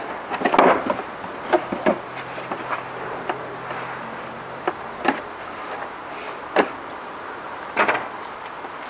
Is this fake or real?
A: real